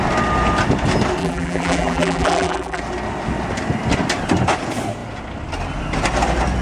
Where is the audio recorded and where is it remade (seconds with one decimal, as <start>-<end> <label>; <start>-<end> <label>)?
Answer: 0.0-1.2 recorded; 1.2-2.8 remade; 2.8-6.6 recorded